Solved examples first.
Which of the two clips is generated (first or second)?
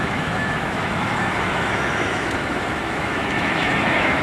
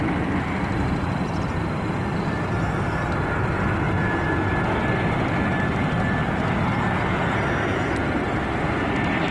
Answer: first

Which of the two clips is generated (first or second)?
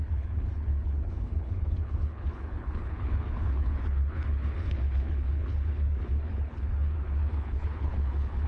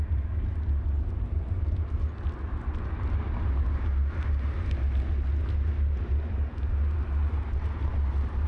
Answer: first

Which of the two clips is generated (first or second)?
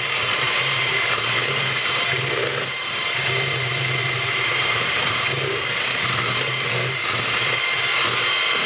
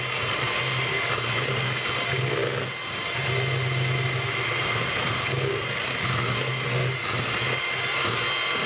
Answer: first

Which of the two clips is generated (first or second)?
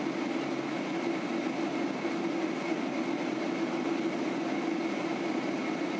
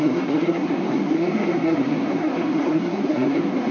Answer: second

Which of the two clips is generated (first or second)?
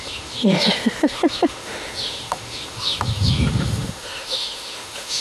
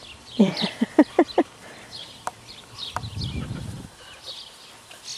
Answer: first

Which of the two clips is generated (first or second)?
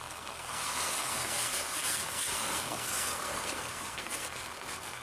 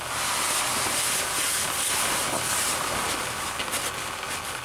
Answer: first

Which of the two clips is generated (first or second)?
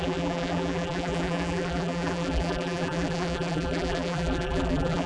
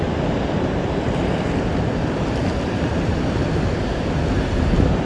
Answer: first